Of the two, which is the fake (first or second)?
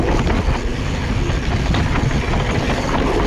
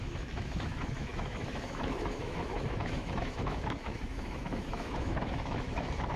second